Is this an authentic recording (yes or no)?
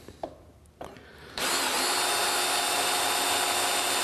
yes